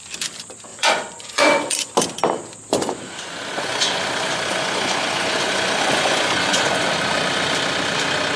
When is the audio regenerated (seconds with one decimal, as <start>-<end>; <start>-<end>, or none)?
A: 0.7-1.9; 2.7-6.9